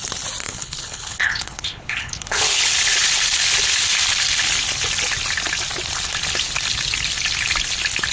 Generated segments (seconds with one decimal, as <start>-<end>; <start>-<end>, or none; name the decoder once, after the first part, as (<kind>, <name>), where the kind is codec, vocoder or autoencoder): 0.4-2.7 (codec, HILCodec)

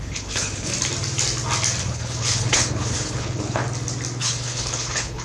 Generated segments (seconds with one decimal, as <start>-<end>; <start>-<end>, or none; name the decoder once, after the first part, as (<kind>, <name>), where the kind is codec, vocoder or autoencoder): 0.0-0.7 (codec, HILCodec); 1.8-3.6; 4.2-5.2

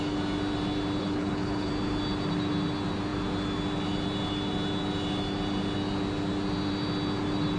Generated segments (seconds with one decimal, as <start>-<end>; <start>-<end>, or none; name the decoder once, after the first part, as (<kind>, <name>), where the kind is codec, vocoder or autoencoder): 1.0-1.7 (codec, HILCodec)

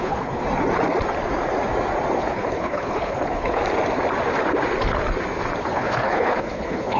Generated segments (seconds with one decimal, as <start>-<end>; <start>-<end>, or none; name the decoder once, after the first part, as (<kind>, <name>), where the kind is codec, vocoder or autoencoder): 0.0-0.4 (codec, HILCodec); 2.2-3.6; 5.6-7.0

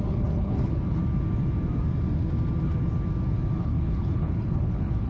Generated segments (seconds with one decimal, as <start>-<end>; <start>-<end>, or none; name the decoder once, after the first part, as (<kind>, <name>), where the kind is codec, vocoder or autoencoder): 0.0-1.0 (codec, HILCodec); 3.6-5.1

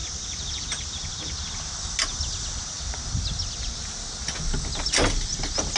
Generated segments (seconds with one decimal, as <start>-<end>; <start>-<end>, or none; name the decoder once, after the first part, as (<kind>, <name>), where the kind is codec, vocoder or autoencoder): none

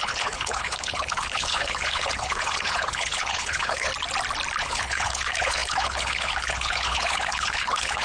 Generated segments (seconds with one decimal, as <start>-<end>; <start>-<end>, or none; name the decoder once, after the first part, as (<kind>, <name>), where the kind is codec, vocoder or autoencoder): 0.0-3.9 (codec, HILCodec); 4.6-8.0